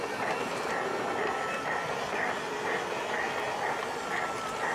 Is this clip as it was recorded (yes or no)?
yes